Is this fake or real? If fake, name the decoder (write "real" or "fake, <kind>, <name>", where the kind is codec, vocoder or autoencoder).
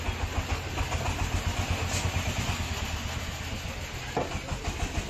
real